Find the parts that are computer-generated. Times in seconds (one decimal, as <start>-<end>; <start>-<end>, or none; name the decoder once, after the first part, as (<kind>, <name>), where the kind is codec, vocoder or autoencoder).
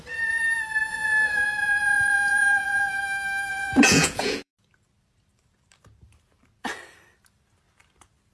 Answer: 0.9-3.0 (vocoder, Vocos); 3.5-4.5